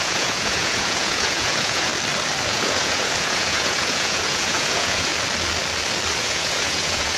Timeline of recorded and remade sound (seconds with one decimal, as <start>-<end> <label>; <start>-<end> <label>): 0.0-1.9 remade; 1.9-2.5 recorded; 2.5-5.1 remade; 5.1-6.2 recorded; 6.2-7.2 remade